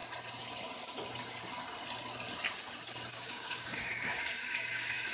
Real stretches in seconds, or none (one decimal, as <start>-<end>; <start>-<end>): 0.0-3.1